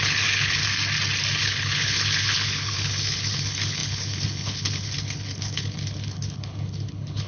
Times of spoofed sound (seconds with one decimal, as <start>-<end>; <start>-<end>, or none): 0.0-0.6; 1.4-7.3